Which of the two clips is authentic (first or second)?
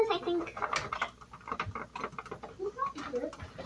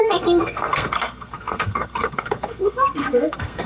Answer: first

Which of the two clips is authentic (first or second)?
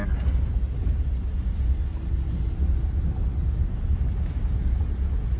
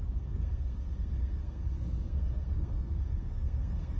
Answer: first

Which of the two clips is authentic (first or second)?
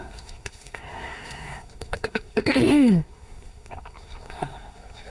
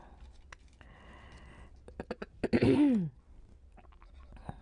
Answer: second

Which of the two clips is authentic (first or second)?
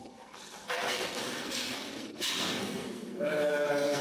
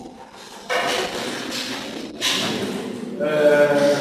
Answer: second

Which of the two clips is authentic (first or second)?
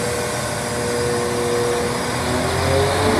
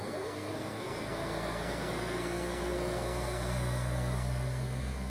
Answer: first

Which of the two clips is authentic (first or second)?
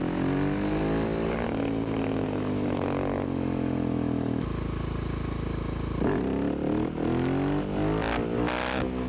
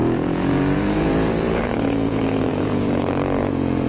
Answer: first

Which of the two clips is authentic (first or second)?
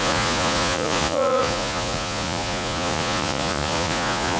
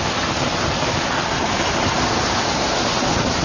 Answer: second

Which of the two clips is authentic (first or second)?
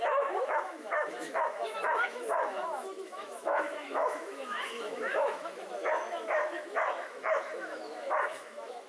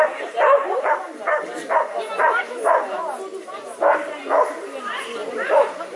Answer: second